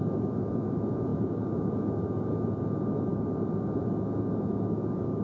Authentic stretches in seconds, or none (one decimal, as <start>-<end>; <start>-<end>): 3.1-4.4